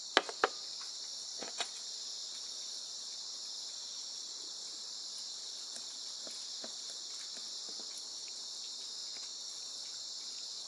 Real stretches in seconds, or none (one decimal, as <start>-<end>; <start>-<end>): 0.0-1.3; 1.8-10.7